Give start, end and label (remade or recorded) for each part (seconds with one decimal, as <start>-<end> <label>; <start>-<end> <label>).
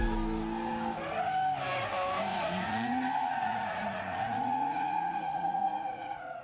0.0-2.3 recorded; 2.3-6.4 remade